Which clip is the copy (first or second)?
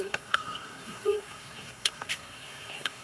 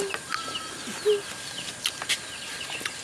first